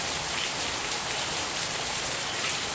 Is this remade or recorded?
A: recorded